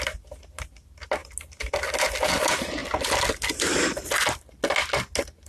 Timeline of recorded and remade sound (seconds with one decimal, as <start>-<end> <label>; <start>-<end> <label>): 0.0-5.5 recorded